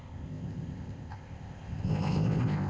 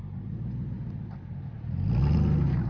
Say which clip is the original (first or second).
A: second